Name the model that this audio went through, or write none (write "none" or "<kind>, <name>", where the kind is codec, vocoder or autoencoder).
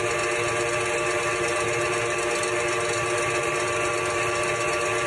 none